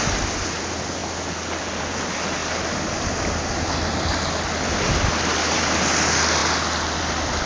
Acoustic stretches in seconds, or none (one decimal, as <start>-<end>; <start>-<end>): 0.0-1.0; 1.8-2.4; 4.1-7.5